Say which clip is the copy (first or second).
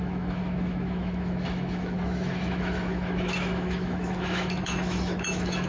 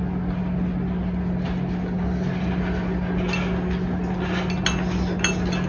first